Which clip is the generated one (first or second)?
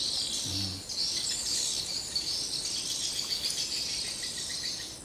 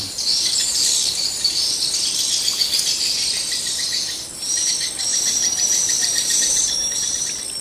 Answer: second